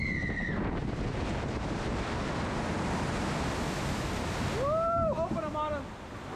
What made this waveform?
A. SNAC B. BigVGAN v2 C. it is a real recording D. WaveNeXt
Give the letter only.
C